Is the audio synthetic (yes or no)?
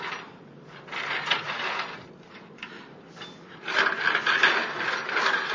no